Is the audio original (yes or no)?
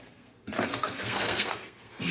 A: no